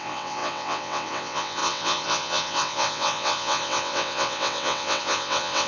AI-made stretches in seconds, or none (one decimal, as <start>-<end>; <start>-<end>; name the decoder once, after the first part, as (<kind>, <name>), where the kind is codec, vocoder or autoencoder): 0.0-5.7 (vocoder, WaveNeXt)